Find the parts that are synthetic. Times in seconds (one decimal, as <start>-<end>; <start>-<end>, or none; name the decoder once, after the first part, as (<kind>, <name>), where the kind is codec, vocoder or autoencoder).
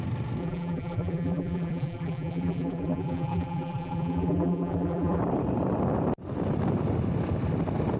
0.4-5.2 (vocoder, BigVGAN v2)